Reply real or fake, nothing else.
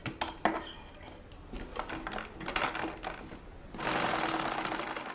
real